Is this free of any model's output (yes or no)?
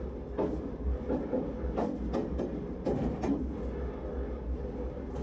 yes